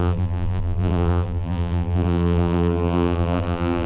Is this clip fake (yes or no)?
yes